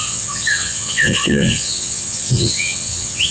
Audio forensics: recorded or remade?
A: remade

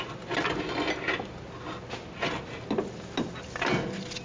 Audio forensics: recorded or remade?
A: recorded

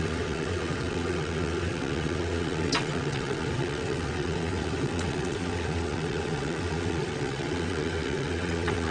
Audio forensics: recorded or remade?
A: remade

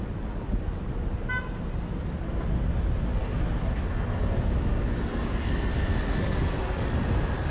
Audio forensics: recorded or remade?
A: recorded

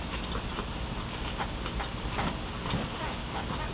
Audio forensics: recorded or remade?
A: recorded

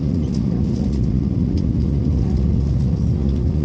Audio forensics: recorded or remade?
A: remade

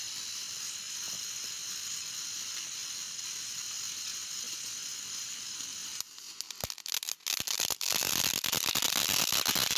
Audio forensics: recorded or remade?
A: recorded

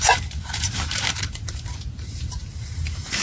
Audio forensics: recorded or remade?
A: remade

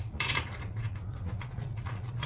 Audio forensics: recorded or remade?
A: remade